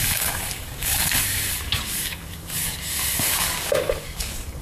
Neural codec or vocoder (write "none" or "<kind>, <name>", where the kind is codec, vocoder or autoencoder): codec, DAC